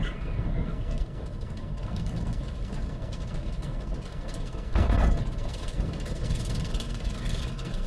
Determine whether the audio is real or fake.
fake